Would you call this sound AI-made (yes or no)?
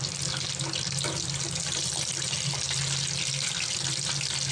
no